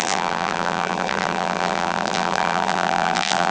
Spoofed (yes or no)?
yes